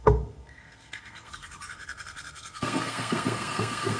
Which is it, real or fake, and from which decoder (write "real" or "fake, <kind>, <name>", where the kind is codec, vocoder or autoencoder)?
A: fake, codec, SNAC